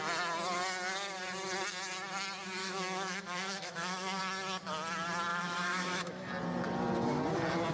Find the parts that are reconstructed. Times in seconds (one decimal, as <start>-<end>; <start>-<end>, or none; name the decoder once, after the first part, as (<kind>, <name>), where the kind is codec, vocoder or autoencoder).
2.6-4.2 (autoencoder, DAC-VAE); 5.3-6.3